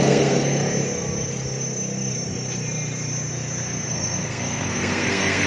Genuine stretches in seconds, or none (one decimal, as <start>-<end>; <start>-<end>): 0.6-3.9